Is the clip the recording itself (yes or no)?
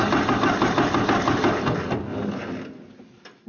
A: yes